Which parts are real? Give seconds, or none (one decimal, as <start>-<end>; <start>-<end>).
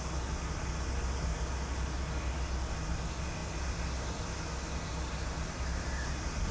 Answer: 0.0-6.5